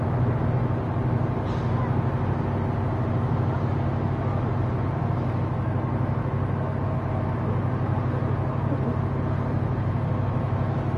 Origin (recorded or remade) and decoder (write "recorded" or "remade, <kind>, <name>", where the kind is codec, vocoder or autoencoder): recorded